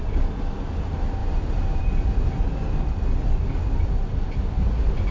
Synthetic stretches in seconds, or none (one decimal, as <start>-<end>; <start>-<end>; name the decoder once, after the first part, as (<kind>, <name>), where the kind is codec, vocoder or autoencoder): 1.2-1.8 (vocoder, BigVGAN v2)